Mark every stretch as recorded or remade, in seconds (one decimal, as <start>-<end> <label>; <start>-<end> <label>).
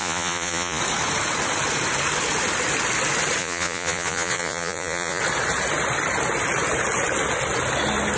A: 0.0-0.8 remade; 0.8-3.4 recorded; 3.4-5.2 remade; 5.2-8.2 recorded